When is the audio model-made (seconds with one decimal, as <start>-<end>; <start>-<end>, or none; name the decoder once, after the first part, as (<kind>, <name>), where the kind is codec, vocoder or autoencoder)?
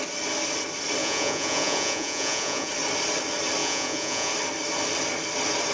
1.0-2.7 (vocoder, Vocos); 3.6-4.3